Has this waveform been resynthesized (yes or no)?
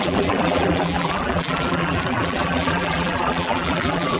yes